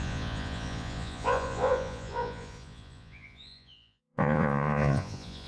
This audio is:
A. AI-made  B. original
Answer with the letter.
A